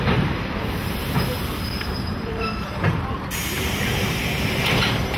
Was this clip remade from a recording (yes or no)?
yes